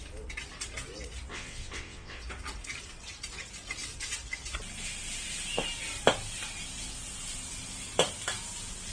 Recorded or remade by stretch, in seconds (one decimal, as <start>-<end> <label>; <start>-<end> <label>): 0.0-1.3 recorded; 1.3-2.2 remade; 2.2-8.9 recorded